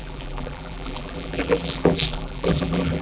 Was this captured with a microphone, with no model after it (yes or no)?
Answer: no